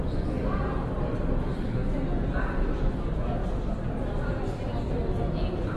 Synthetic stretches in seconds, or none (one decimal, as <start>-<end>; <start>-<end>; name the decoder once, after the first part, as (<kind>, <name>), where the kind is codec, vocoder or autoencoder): none